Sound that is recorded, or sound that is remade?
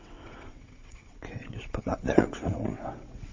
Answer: remade